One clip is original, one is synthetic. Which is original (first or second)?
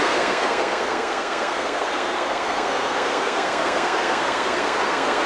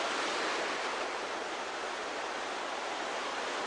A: second